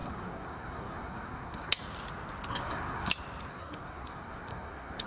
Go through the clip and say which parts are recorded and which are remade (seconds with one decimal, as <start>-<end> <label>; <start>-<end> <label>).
0.0-1.8 remade; 1.8-2.5 recorded; 2.5-3.1 remade; 3.1-3.5 recorded; 3.5-5.1 remade